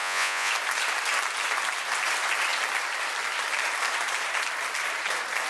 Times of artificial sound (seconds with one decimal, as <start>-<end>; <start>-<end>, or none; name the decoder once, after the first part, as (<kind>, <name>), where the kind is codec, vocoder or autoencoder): 0.0-0.5 (vocoder, Vocos)